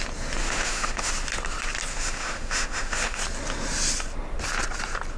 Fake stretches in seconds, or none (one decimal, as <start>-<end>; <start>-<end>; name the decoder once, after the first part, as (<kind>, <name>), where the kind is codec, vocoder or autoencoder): 0.4-1.1 (autoencoder, DAC-VAE); 1.9-3.2